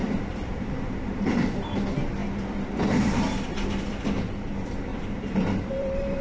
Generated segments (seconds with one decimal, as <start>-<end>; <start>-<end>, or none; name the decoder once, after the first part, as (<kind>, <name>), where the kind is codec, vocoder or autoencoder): 0.0-1.7 (vocoder, BigVGAN v2); 4.9-6.2

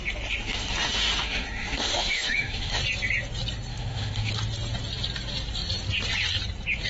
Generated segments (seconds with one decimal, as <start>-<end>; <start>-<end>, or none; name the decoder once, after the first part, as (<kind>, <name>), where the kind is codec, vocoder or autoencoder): 0.4-2.8 (autoencoder, DAC-VAE); 3.7-4.3

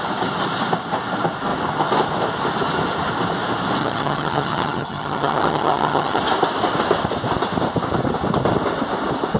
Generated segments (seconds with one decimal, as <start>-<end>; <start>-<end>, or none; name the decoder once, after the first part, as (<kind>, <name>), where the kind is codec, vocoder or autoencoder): 3.8-6.2 (vocoder, HiFi-GAN)

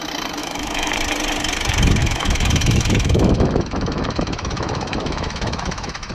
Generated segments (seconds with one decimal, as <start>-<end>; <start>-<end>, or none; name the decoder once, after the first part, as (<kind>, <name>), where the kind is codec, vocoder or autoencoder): 0.4-0.9 (autoencoder, DAC-VAE); 2.0-6.1